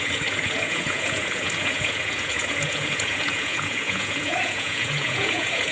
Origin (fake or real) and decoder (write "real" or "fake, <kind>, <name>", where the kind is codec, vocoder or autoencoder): fake, vocoder, Vocos